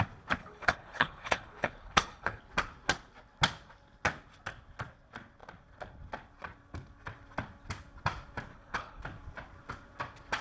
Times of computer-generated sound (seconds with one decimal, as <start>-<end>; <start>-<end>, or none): 0.4-2.4; 8.5-9.0